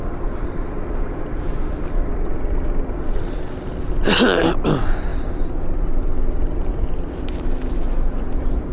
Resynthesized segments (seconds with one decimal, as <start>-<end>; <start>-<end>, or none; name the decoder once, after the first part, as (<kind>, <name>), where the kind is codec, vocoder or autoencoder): none